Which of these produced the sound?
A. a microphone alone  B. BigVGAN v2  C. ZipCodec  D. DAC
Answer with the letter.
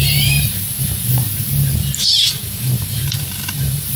B